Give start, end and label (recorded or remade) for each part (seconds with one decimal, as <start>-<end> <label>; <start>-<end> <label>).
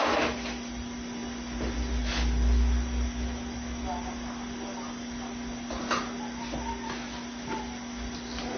0.0-8.6 recorded